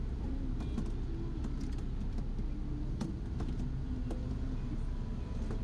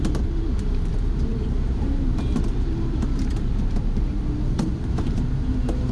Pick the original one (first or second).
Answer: first